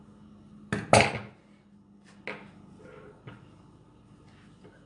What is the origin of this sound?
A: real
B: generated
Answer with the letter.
A